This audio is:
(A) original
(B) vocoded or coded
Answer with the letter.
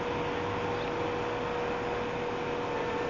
A